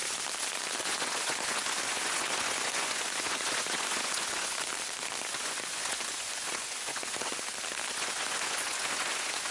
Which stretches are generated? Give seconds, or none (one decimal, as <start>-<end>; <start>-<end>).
0.8-4.7; 5.2-7.3; 7.9-9.5